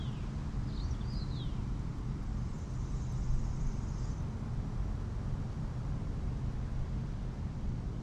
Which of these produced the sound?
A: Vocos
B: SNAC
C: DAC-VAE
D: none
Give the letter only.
D